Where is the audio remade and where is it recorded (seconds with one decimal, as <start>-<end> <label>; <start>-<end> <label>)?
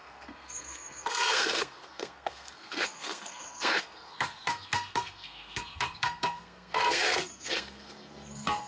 0.0-8.7 remade